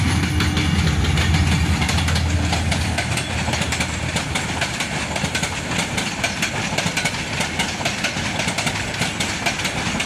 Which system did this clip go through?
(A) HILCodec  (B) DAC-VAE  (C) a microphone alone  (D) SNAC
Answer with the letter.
C